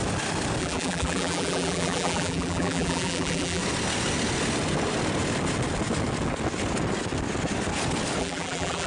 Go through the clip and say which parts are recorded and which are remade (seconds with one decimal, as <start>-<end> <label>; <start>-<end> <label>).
0.0-0.6 recorded; 0.6-3.6 remade; 3.6-8.2 recorded; 8.2-8.9 remade

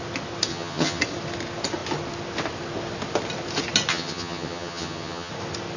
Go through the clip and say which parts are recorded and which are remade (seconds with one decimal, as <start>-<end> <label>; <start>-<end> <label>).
0.0-0.5 recorded; 0.5-1.0 remade; 1.0-3.9 recorded; 3.9-5.3 remade; 5.3-5.8 recorded